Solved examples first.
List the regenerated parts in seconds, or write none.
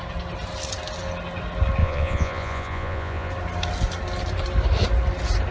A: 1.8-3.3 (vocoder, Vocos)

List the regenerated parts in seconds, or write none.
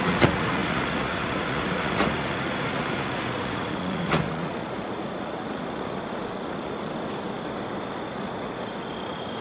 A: 0.0-6.8 (vocoder, Vocos); 7.8-9.4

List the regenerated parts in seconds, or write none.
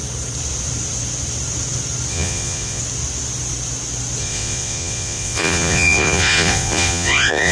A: 2.1-2.8 (vocoder, Vocos); 4.2-7.5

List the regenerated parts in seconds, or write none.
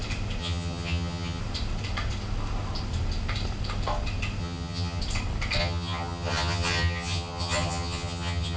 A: 0.4-1.4 (vocoder, HiFi-GAN); 4.4-5.0; 5.6-8.6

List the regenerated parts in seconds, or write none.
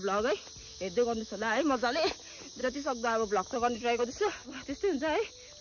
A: 0.7-2.2 (autoencoder, DAC-VAE); 2.6-4.0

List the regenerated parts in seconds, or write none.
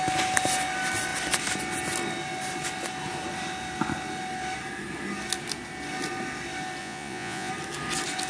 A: 6.8-7.5 (vocoder, Vocos)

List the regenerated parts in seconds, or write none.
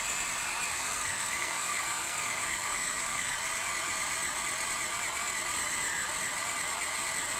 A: 0.7-3.3 (codec, SNAC)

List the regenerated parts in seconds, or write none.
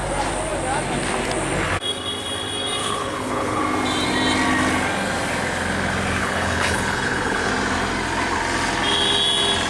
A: 2.8-3.6 (codec, HILCodec); 6.2-7.5